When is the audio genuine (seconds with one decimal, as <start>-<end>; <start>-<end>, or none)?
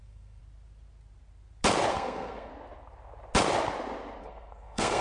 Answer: 0.4-1.9; 2.5-4.2